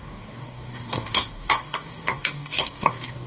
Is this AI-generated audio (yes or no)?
yes